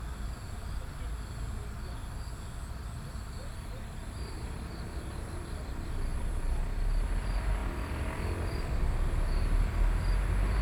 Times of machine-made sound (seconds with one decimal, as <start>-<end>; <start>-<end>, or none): 3.5-5.4; 6.1-6.6